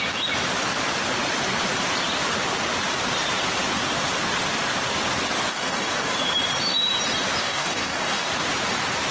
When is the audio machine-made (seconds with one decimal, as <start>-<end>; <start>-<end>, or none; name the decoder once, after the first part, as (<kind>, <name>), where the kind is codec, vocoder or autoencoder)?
5.5-6.1 (codec, DAC); 7.4-8.3